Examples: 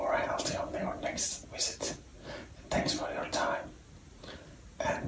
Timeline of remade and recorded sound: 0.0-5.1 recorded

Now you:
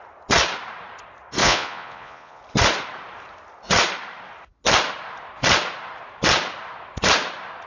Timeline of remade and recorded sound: 0.0-1.4 recorded; 1.4-2.4 remade; 2.4-7.7 recorded